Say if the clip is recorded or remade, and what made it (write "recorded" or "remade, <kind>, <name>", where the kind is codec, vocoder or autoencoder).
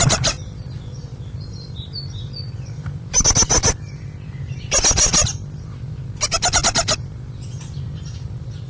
recorded